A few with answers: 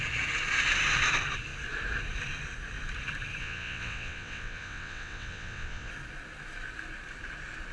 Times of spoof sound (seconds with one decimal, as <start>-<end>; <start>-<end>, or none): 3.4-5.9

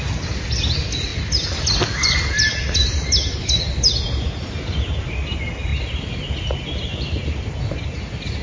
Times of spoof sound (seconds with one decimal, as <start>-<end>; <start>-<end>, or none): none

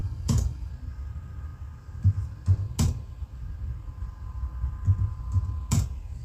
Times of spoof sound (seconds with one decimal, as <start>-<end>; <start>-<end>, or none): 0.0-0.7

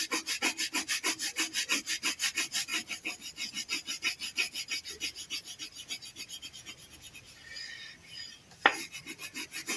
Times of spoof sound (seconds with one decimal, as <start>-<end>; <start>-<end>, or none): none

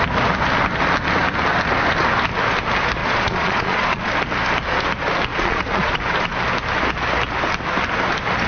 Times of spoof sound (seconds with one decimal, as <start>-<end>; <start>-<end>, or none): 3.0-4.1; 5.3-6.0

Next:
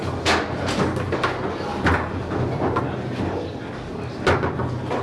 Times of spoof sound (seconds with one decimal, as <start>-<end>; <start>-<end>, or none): none

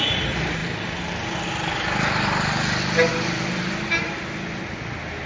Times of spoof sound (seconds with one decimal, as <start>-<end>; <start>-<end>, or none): none

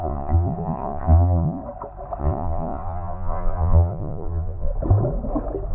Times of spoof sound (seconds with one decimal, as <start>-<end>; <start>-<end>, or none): 0.0-1.6; 2.2-4.7